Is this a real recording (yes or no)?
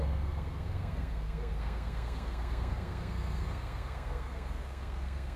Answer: no